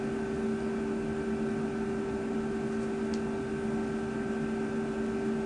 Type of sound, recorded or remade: recorded